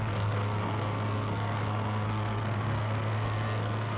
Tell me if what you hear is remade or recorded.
remade